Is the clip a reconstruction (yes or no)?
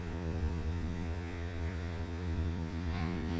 yes